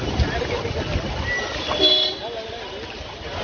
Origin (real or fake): real